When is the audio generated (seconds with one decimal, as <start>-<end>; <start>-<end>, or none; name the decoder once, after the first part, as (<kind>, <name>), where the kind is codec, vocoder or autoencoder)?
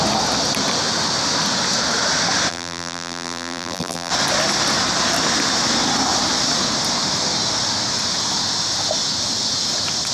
2.5-4.1 (vocoder, BigVGAN v2)